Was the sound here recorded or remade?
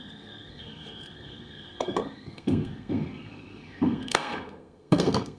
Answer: remade